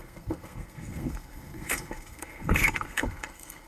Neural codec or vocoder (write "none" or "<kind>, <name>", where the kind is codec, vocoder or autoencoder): codec, SNAC